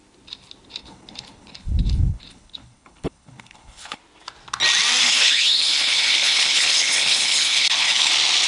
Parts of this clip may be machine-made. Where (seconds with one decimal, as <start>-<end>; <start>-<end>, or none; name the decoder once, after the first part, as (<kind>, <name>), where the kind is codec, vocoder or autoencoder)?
0.8-4.0 (codec, HILCodec); 5.0-8.1